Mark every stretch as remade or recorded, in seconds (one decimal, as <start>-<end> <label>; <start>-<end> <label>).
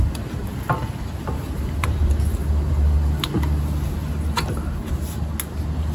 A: 0.0-5.9 recorded